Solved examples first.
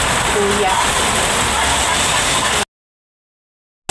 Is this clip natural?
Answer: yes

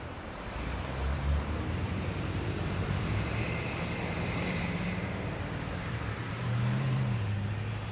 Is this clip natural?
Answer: no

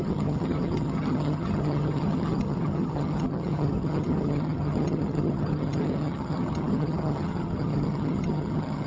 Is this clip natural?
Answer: no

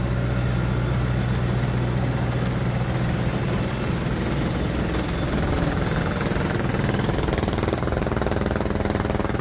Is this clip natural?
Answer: yes